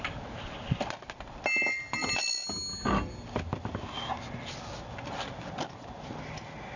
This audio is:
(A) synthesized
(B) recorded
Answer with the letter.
B